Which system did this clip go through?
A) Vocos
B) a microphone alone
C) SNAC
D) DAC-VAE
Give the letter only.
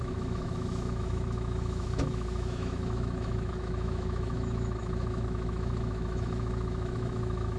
D